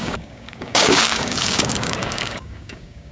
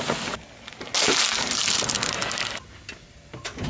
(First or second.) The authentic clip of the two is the second